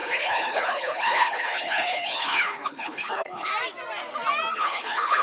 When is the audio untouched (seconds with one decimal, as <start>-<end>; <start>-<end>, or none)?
3.5-4.5